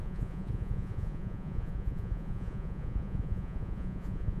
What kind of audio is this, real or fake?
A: fake